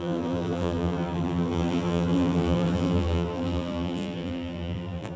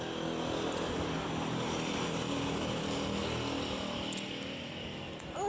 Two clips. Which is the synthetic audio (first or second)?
first